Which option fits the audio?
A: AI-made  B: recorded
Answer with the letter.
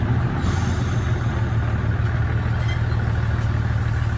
B